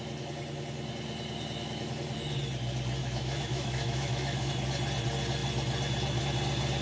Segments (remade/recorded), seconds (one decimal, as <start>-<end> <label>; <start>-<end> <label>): 0.0-3.0 recorded; 3.0-4.5 remade; 4.5-6.8 recorded